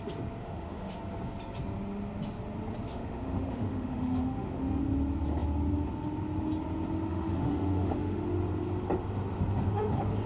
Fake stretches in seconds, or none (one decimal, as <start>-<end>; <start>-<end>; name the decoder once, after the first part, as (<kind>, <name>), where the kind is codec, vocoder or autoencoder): 0.4-1.0 (autoencoder, DAC-VAE); 2.9-4.8; 7.1-8.2